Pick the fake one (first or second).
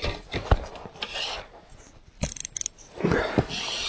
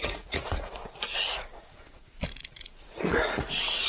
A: second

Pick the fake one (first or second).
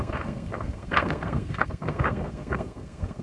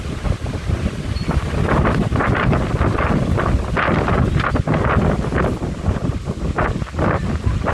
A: first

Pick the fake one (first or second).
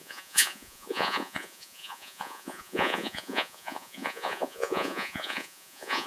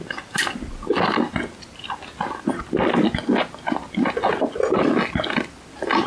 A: first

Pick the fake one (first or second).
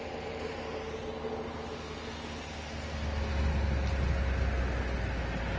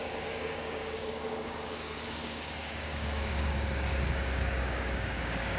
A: second